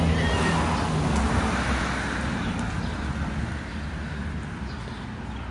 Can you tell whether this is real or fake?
real